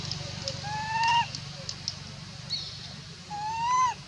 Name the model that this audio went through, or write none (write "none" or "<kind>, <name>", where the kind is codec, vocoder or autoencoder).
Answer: none